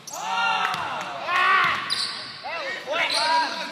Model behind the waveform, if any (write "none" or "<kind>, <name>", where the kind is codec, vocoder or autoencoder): none